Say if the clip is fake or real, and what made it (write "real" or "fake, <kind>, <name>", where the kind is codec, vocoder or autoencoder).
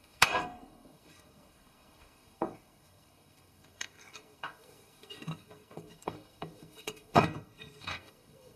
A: fake, codec, SNAC